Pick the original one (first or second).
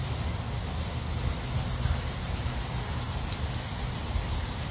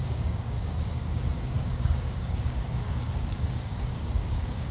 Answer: first